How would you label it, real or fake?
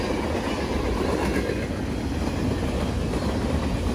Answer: real